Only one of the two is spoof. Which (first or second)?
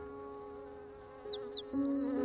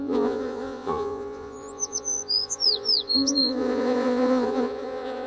second